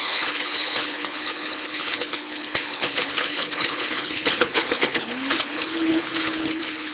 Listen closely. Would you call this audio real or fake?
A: fake